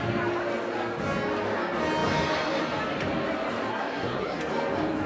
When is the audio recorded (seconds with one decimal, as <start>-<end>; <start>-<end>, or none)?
0.0-3.7; 4.4-5.1

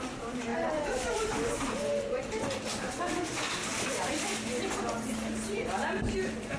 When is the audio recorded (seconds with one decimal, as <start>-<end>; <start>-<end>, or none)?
3.7-5.4

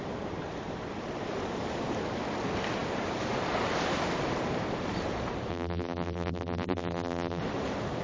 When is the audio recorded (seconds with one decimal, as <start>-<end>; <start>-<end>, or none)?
0.0-5.5; 7.4-8.0

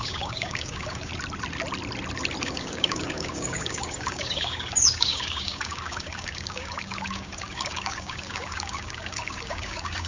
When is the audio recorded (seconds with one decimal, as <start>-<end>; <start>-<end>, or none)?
1.1-2.4

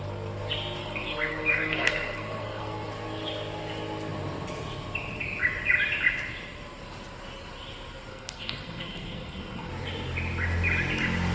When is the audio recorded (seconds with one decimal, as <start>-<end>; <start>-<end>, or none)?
0.0-0.8; 2.9-8.1; 9.7-11.3

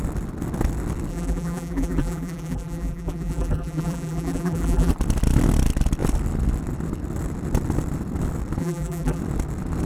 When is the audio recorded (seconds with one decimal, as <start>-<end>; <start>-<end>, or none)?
0.0-1.1; 4.9-8.6; 9.2-9.9

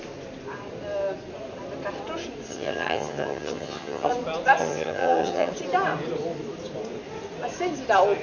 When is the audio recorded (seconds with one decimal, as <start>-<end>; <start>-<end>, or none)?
0.0-2.5; 4.1-4.6; 5.5-8.2

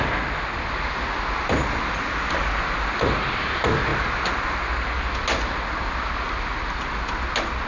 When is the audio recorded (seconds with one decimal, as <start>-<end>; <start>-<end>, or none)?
0.0-7.7